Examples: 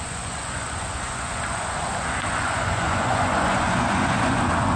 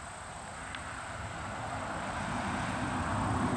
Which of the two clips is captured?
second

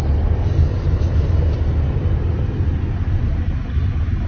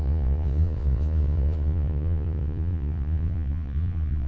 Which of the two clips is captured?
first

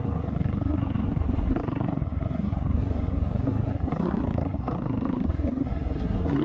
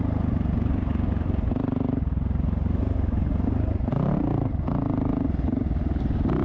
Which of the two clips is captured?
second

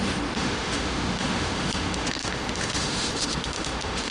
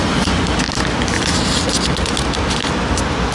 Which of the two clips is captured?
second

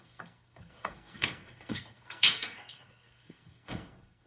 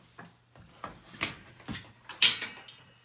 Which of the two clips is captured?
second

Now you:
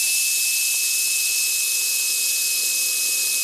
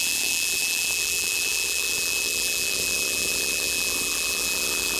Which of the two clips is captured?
first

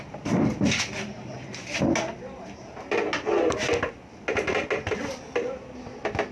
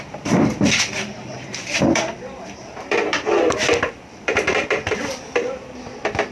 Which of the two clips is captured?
first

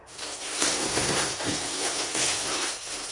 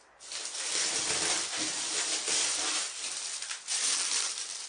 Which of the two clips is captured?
second